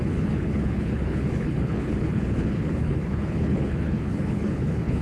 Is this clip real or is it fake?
fake